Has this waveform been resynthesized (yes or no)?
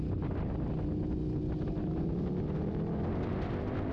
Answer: no